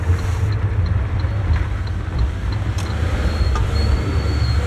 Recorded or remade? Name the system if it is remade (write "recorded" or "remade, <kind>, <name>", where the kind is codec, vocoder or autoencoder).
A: recorded